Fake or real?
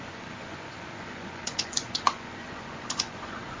fake